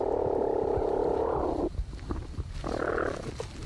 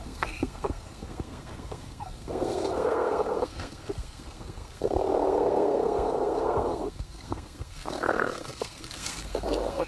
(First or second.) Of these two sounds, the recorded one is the first